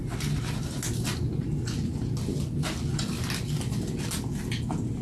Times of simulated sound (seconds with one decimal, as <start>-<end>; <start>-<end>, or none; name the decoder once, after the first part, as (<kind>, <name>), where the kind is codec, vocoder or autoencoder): none